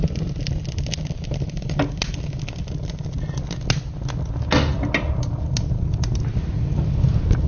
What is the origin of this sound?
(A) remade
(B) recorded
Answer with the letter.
B